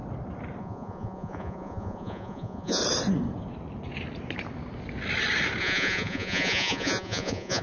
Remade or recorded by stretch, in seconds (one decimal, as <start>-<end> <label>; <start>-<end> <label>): 0.0-0.6 recorded; 0.6-2.8 remade; 2.8-5.6 recorded; 5.6-7.6 remade